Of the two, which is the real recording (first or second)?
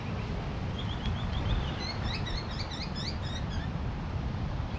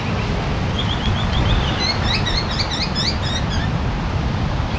second